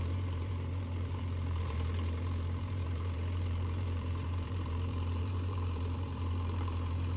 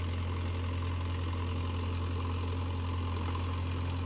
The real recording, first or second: second